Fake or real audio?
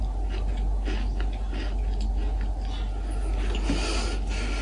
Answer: real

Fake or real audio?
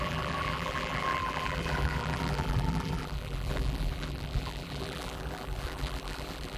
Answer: fake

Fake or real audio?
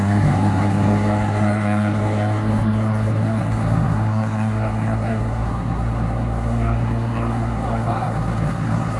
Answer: fake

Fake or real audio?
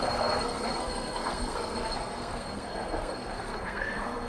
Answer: fake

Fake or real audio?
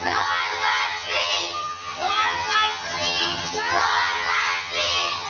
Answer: fake